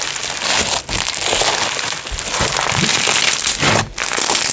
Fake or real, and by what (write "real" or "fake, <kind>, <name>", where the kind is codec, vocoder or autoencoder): real